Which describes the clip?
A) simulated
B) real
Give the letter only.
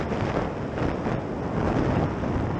B